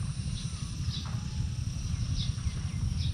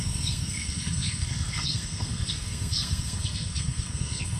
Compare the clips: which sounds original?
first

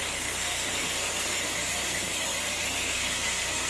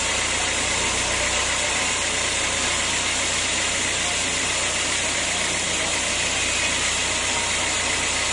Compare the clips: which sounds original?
second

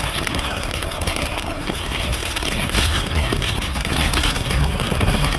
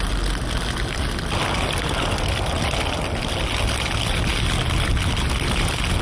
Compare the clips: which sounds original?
second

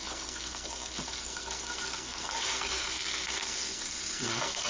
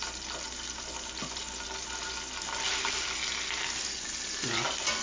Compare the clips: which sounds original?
second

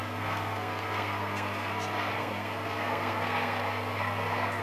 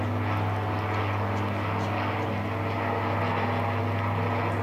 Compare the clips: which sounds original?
second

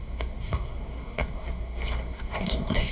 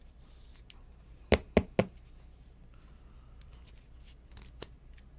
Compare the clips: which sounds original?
second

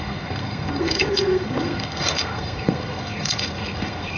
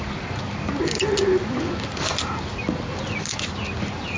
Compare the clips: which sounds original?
second